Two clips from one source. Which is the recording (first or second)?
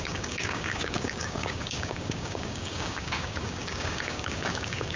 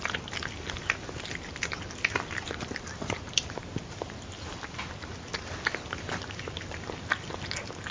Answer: second